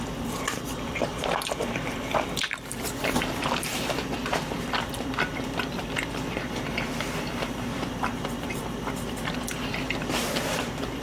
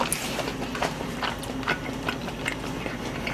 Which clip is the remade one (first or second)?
first